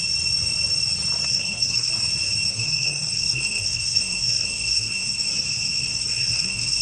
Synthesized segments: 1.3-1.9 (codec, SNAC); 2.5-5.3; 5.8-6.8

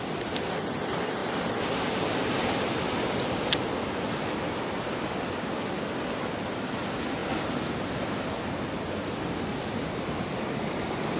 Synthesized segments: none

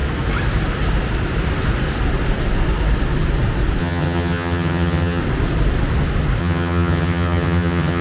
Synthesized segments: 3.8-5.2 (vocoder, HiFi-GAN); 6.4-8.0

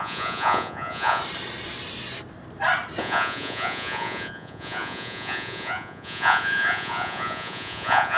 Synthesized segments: 0.0-1.2 (vocoder, Vocos); 3.0-8.2

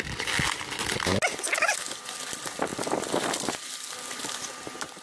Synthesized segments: none

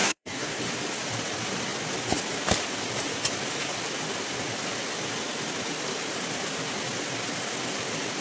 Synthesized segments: 0.0-0.6 (codec, SNAC)